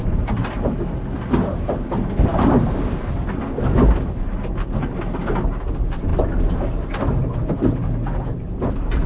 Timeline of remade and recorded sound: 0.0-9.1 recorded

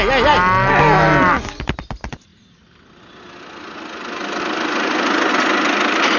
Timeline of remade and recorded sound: 0.0-6.2 recorded

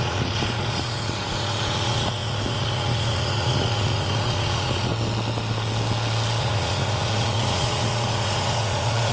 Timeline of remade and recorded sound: 0.0-4.9 remade; 4.9-6.4 recorded; 6.4-9.1 remade

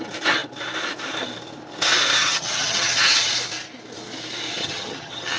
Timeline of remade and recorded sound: 0.0-2.2 recorded; 2.2-3.3 remade; 3.3-4.6 recorded; 4.6-5.4 remade

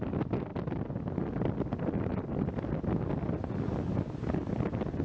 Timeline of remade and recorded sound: 0.0-3.9 recorded; 3.9-4.5 remade; 4.5-5.0 recorded

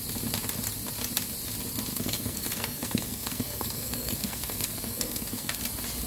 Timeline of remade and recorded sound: 0.0-1.9 recorded; 1.9-5.6 remade; 5.6-6.1 recorded

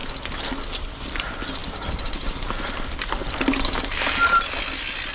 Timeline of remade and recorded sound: 0.0-5.1 recorded